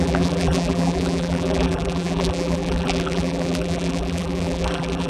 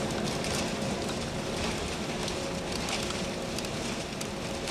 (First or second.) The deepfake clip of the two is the first